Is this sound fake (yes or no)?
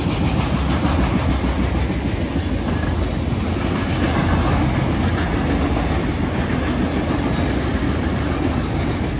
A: no